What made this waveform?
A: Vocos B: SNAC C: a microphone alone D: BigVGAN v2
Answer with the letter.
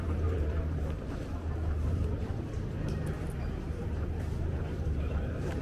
D